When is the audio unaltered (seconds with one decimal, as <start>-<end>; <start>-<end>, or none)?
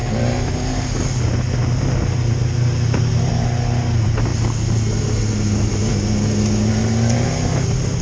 0.0-8.0